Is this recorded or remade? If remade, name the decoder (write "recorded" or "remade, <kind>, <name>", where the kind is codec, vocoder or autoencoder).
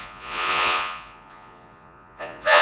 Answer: remade, vocoder, Vocos